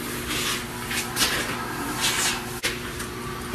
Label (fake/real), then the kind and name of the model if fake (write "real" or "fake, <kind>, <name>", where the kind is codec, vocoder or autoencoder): real